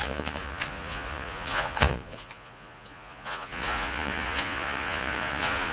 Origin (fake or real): fake